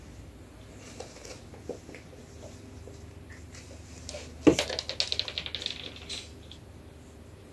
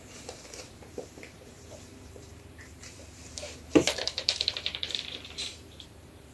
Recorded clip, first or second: first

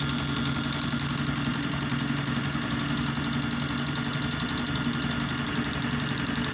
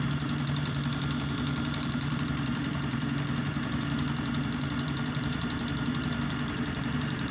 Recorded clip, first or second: first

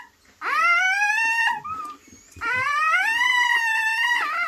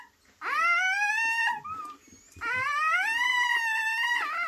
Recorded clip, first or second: second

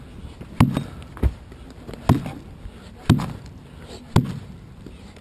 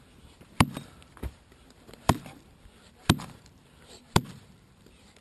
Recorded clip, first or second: first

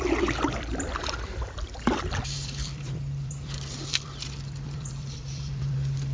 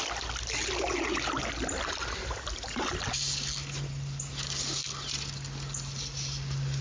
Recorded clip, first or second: second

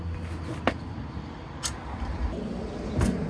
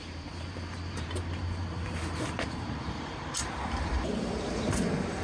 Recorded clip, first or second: first